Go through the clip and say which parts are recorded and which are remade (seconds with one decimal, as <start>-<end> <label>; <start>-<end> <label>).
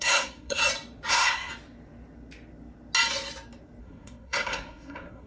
0.0-0.6 remade; 0.6-1.1 recorded; 1.1-1.5 remade; 1.5-3.8 recorded; 3.8-5.3 remade